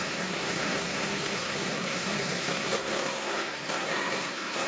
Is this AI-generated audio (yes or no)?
yes